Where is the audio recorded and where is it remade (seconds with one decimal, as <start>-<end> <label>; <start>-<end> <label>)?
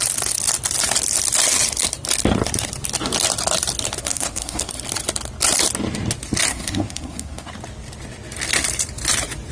0.0-4.0 recorded; 4.0-4.6 remade; 4.6-6.5 recorded; 6.5-7.5 remade; 7.5-9.5 recorded